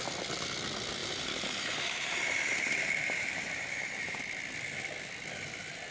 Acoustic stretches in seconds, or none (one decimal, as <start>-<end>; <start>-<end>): 0.0-1.0; 4.2-5.9